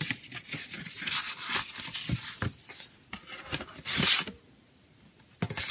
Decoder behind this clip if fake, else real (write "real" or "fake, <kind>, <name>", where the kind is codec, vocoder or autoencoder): real